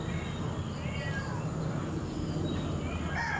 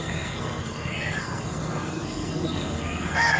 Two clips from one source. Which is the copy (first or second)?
second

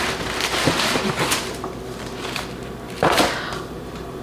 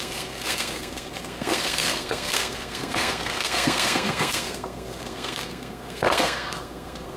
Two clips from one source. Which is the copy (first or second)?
second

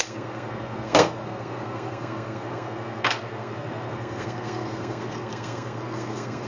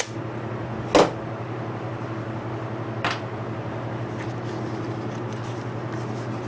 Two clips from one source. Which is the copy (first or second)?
first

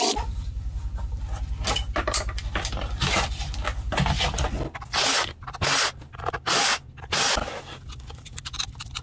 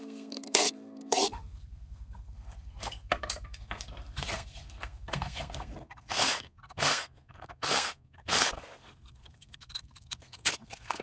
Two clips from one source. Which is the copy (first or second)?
second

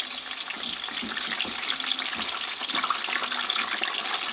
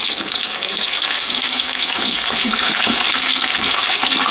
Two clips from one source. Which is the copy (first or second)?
second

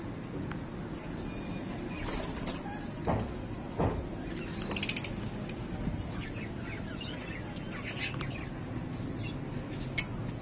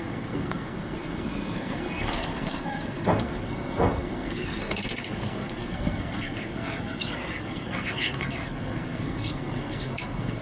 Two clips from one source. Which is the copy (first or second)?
second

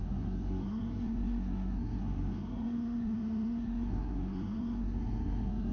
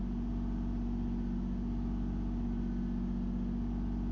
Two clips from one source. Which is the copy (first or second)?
first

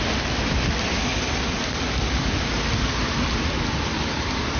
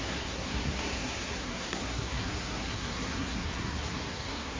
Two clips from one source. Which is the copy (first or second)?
second